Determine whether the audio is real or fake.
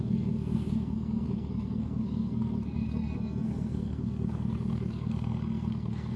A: fake